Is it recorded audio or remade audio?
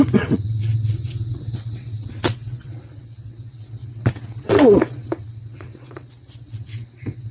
remade